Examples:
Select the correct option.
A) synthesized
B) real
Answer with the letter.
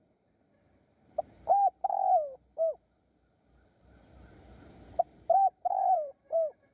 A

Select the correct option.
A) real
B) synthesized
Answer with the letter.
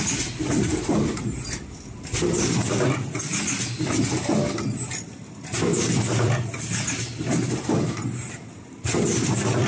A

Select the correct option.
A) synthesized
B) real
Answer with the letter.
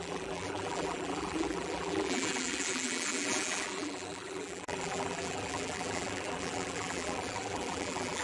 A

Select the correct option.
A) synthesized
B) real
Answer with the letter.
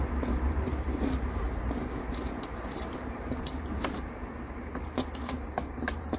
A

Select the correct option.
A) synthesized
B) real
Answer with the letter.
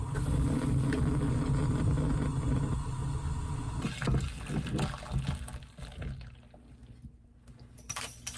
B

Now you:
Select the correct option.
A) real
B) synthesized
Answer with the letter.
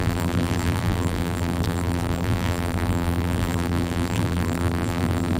B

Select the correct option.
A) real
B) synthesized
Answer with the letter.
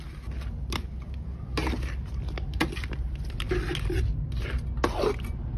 A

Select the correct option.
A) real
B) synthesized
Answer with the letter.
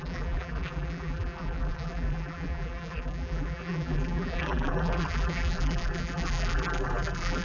B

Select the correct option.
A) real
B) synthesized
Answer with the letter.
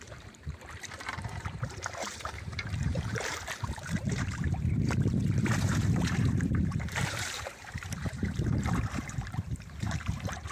B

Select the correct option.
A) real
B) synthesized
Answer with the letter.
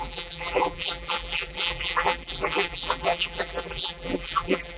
B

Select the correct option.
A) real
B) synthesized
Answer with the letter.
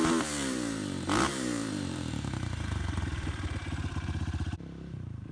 B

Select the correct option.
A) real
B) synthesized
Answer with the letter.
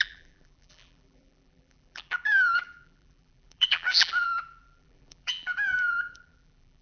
B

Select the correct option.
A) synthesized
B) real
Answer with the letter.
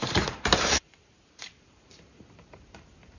A